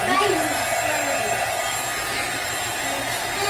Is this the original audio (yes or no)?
yes